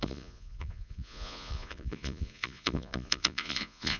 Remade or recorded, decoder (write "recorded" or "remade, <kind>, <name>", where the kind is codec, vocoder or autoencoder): remade, vocoder, Vocos